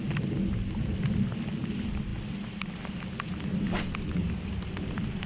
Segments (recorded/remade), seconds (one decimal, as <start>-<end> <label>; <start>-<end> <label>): 0.0-5.3 recorded